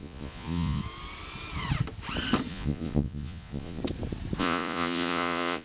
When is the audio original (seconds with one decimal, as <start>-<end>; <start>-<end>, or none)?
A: 0.8-2.5; 3.8-4.4